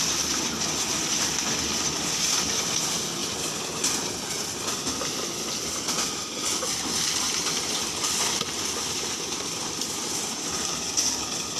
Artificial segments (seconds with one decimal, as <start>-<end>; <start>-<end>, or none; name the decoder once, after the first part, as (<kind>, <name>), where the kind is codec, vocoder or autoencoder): none

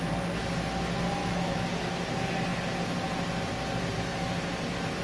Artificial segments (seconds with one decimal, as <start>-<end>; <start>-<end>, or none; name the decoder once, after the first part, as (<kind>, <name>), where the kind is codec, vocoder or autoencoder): 1.2-1.7 (autoencoder, DAC-VAE)

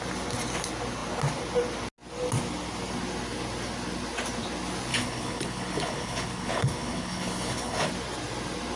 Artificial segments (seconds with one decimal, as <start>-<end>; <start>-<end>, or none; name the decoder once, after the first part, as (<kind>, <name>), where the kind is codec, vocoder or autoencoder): 4.9-7.9 (codec, HILCodec)

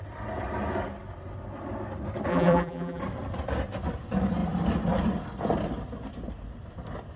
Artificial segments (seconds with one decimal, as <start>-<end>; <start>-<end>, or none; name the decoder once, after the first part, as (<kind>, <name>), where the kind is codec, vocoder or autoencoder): 2.3-3.0 (vocoder, BigVGAN v2)